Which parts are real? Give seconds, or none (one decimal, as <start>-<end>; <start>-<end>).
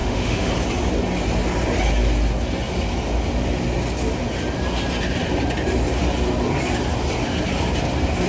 0.5-8.3